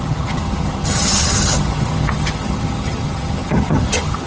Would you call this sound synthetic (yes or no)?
yes